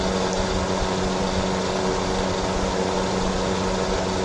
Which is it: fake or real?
real